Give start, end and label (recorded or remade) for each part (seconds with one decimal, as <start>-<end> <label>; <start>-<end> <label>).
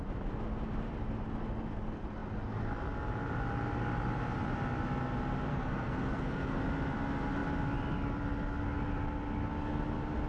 0.0-5.5 recorded; 5.5-6.6 remade; 6.6-10.3 recorded